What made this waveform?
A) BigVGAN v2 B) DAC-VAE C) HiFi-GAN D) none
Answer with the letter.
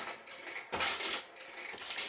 D